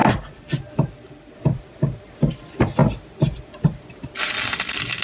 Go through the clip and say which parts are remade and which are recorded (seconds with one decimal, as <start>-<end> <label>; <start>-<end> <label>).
0.0-2.8 recorded; 2.8-5.0 remade